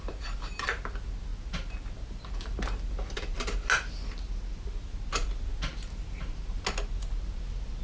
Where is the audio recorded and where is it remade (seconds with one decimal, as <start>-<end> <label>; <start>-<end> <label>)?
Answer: 0.0-7.8 recorded